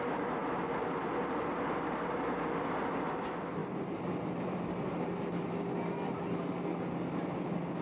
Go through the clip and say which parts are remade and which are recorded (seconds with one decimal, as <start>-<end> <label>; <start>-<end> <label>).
0.0-7.8 recorded